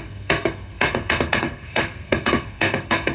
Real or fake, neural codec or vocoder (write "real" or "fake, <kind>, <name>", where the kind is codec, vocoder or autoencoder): fake, codec, SNAC